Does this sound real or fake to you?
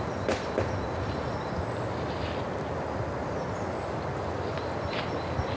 real